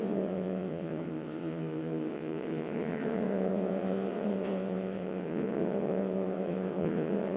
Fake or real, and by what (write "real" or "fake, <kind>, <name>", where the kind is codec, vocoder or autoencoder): fake, vocoder, WaveNeXt